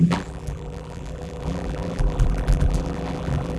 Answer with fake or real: fake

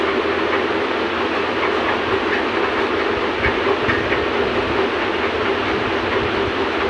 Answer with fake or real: real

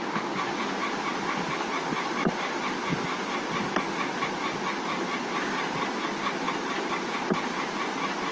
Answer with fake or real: real